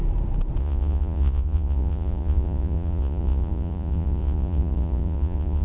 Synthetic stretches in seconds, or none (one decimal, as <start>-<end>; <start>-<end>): 0.6-5.6